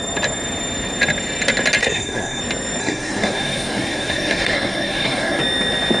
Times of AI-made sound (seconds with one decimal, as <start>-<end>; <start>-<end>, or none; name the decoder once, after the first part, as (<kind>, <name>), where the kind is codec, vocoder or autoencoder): 1.8-2.4 (codec, SNAC); 2.8-5.4